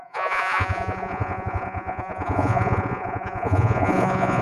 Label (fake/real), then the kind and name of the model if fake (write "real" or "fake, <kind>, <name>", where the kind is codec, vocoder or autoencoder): fake, vocoder, Vocos